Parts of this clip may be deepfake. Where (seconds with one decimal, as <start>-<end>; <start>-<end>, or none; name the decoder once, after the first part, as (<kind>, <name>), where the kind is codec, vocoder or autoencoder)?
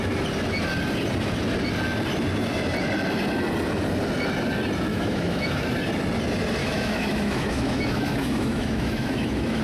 4.9-5.7 (autoencoder, DAC-VAE); 6.6-9.6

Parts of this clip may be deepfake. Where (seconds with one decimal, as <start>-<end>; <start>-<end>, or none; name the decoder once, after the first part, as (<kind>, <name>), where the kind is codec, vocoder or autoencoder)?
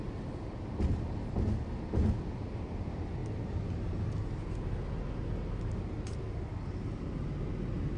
none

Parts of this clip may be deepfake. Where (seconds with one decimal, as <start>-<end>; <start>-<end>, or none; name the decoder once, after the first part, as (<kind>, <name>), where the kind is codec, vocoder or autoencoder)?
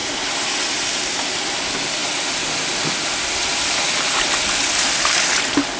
none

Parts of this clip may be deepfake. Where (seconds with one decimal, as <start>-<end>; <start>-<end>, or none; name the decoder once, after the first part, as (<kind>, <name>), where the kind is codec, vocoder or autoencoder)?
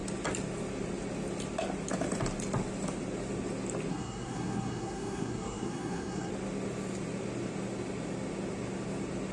3.9-6.3 (codec, SNAC)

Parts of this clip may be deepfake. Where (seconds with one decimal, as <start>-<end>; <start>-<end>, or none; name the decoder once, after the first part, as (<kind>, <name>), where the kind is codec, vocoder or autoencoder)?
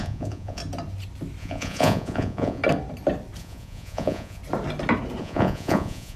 0.0-0.6 (vocoder, Vocos); 1.4-2.6; 3.4-4.4; 5.2-6.2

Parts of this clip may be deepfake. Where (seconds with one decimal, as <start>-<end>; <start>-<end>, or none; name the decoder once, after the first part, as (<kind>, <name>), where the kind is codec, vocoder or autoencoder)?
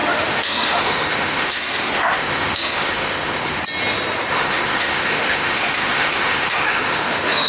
0.0-3.6 (autoencoder, DAC-VAE); 4.3-7.5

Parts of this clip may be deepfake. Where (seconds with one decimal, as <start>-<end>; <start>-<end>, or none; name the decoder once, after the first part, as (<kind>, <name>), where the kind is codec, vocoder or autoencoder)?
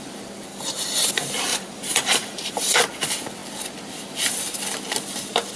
0.5-1.1 (vocoder, BigVGAN v2); 1.5-2.8